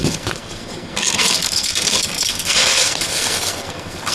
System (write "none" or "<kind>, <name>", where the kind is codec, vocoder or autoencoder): codec, SNAC